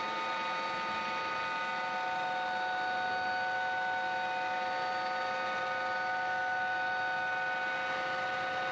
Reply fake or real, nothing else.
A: real